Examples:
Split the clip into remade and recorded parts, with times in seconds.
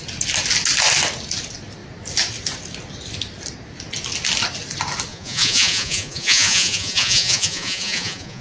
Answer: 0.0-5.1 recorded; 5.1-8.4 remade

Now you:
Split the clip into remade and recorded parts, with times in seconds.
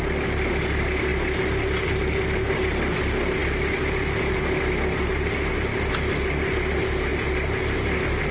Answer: 0.0-8.3 recorded